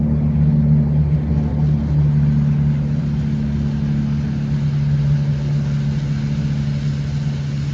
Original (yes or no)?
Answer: yes